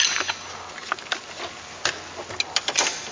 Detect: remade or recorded recorded